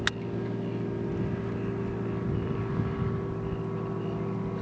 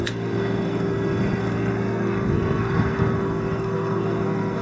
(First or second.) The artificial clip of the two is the second